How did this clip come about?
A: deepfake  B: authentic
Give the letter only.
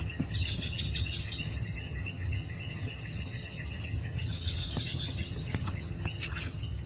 A